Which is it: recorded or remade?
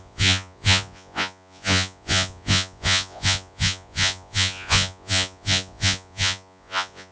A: remade